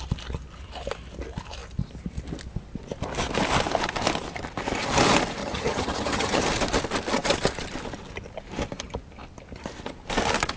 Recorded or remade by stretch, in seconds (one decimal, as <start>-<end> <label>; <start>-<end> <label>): 0.0-5.4 recorded; 5.4-6.4 remade; 6.4-10.6 recorded